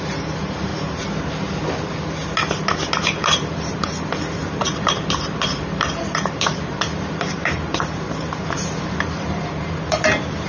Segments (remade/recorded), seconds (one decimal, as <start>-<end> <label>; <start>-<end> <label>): 0.0-0.7 remade; 0.7-2.9 recorded; 2.9-10.5 remade